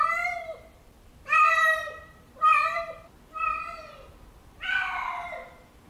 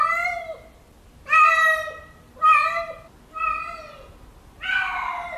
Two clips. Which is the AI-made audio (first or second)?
first